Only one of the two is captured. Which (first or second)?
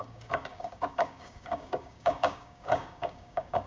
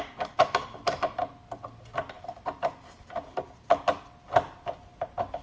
second